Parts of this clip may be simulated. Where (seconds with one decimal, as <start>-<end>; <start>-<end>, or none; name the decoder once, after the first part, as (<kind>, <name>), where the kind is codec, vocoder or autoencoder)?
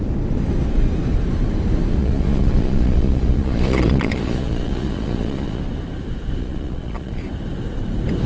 2.0-5.6 (vocoder, Vocos); 6.4-7.2